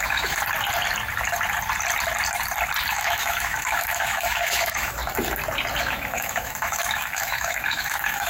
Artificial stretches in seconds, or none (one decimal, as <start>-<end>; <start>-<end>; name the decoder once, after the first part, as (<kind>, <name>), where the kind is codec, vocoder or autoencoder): 0.0-0.4 (autoencoder, DAC-VAE); 2.9-5.0; 5.8-8.3